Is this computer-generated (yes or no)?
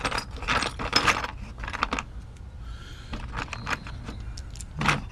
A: no